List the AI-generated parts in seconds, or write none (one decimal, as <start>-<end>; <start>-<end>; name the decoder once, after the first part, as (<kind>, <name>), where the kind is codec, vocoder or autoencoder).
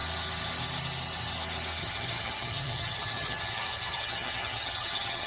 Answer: 1.8-5.3 (vocoder, HiFi-GAN)